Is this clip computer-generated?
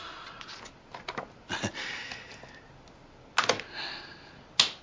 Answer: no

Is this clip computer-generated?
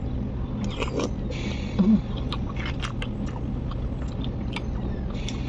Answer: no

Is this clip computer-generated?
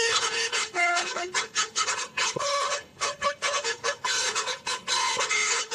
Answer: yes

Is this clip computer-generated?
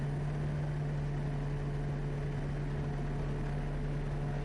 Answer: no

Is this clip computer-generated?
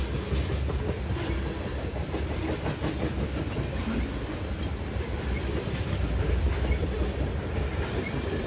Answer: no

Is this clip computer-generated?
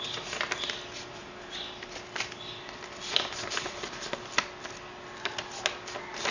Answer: no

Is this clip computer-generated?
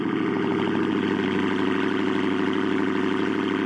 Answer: no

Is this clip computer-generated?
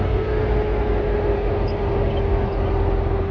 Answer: no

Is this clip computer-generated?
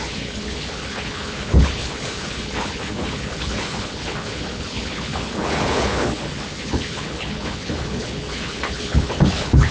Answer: yes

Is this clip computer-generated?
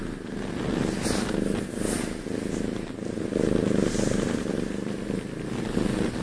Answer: no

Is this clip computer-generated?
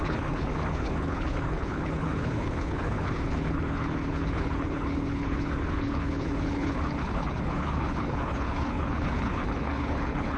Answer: yes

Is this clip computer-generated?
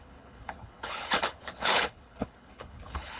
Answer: yes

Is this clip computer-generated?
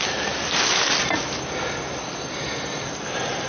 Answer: no